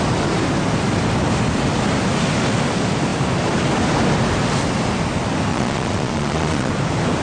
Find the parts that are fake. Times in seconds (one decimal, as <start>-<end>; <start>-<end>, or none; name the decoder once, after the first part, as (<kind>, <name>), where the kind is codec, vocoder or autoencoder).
5.5-6.7 (vocoder, Vocos)